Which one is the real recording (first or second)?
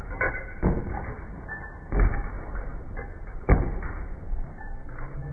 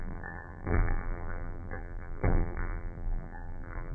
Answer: first